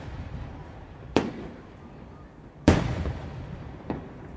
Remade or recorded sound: remade